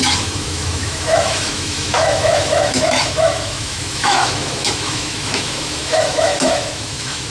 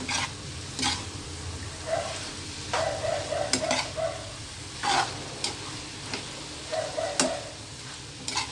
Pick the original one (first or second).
second